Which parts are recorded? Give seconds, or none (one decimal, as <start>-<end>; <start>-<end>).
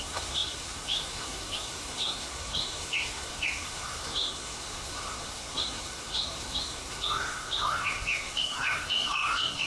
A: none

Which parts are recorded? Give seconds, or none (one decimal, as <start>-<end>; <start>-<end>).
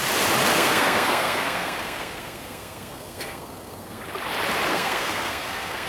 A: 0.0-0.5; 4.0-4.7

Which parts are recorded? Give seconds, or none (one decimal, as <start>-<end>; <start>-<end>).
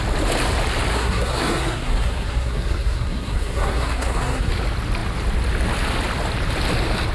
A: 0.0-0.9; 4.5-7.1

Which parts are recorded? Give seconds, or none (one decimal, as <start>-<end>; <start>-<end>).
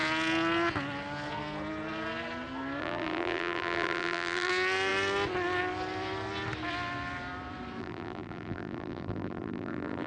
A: 0.0-2.8; 4.5-7.8